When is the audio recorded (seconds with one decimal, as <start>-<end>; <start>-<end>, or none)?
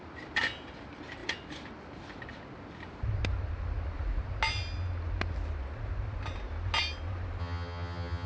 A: 0.0-7.4